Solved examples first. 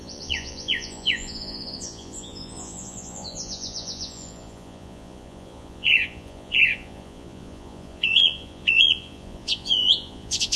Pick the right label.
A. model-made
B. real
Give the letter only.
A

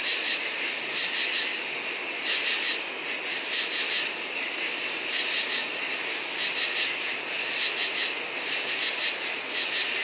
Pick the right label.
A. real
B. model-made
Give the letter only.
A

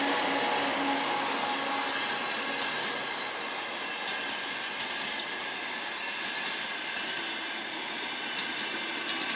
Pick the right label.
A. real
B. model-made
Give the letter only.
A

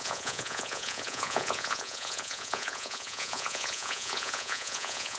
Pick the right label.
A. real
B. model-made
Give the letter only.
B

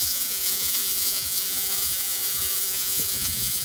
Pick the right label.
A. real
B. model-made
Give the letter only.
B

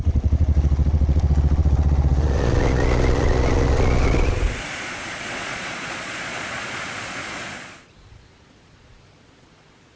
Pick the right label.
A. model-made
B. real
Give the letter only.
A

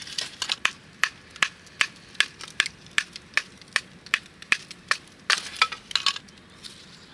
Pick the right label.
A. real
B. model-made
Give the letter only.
A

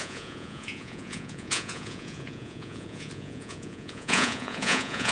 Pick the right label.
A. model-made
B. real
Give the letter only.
A